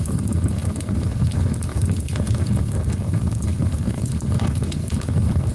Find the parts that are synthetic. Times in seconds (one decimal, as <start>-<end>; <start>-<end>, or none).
0.0-5.5